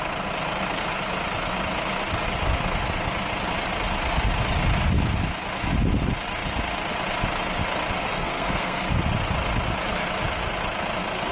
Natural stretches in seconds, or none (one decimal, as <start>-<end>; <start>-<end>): 0.0-8.0; 8.8-11.3